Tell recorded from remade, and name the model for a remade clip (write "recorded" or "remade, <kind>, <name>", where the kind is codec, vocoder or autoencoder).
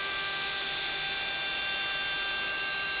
recorded